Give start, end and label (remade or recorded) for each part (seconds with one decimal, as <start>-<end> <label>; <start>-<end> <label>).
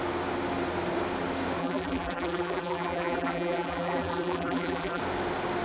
0.0-1.6 recorded; 1.6-5.0 remade; 5.0-5.6 recorded